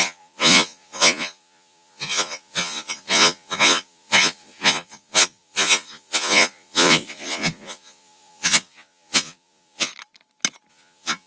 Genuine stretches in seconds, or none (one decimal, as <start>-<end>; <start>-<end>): 9.9-10.7